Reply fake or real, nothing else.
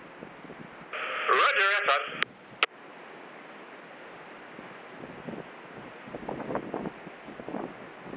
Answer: real